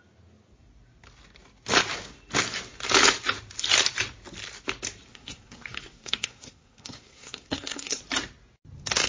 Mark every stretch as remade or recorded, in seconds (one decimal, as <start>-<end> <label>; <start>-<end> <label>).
0.0-5.1 recorded; 5.1-8.0 remade; 8.0-9.1 recorded